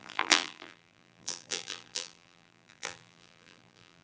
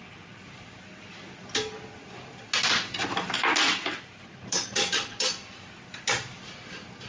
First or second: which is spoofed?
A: first